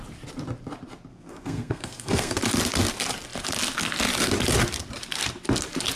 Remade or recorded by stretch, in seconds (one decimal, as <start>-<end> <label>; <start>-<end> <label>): 0.0-1.1 recorded; 1.1-2.4 remade; 2.4-6.0 recorded

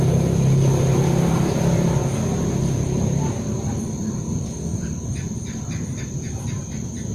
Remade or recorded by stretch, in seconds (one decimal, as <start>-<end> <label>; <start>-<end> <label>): 0.0-2.0 remade; 2.0-2.6 recorded; 2.6-7.1 remade

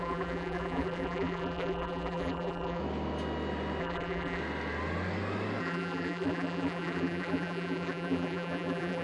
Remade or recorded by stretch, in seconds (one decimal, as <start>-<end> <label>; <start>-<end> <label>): 0.0-2.8 remade; 2.8-3.8 recorded; 3.8-4.4 remade; 4.4-5.6 recorded; 5.6-9.0 remade